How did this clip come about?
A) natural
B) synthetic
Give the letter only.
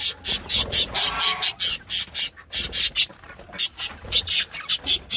A